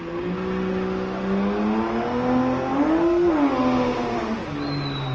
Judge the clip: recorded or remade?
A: recorded